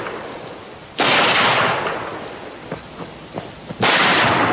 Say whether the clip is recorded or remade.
recorded